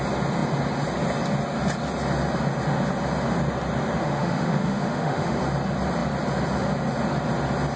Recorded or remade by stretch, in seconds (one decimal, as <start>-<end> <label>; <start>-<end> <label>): 0.0-4.0 recorded; 4.0-5.4 remade; 5.4-7.8 recorded